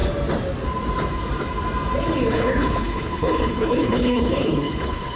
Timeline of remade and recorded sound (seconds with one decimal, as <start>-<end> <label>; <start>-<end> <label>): 0.0-2.3 recorded; 2.3-5.2 remade